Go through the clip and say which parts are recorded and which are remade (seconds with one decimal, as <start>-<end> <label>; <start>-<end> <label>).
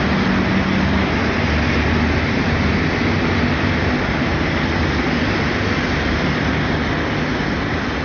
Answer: 0.0-8.0 recorded